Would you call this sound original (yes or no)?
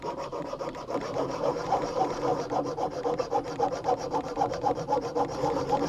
no